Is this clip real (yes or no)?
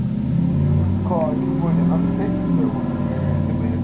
yes